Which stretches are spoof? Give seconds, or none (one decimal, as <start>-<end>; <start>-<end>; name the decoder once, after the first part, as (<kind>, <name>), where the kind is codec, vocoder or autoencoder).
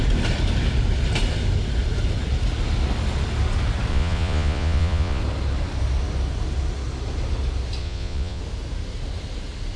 3.9-5.2 (vocoder, Vocos); 7.8-8.4